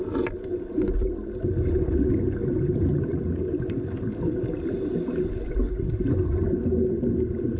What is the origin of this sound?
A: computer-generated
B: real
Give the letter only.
B